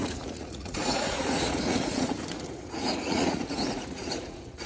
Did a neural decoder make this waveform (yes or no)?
yes